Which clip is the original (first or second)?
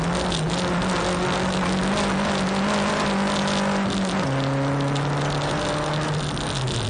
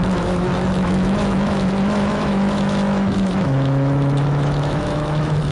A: first